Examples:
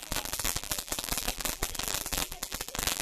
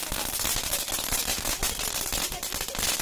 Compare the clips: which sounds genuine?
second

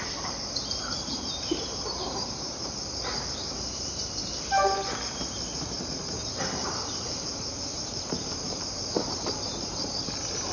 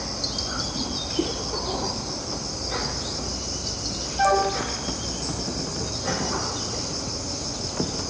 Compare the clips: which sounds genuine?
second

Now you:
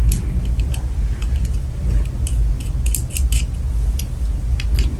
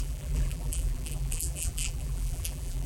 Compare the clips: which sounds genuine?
first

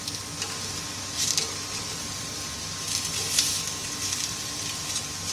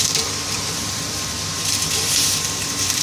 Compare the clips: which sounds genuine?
first